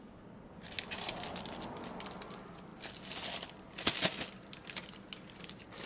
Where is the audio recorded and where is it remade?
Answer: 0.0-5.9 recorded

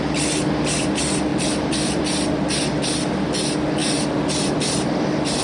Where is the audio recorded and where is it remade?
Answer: 0.0-1.3 recorded; 1.3-2.0 remade; 2.0-5.4 recorded

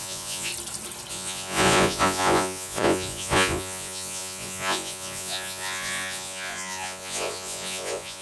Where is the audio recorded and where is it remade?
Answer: 0.0-0.5 remade; 0.5-1.1 recorded; 1.1-8.2 remade

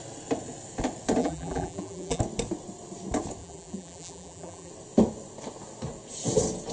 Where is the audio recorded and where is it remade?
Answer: 0.0-1.2 recorded; 1.2-2.2 remade; 2.2-3.4 recorded; 3.4-4.7 remade; 4.7-6.7 recorded

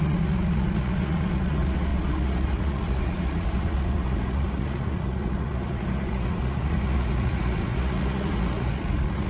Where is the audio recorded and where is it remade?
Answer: 0.0-9.3 remade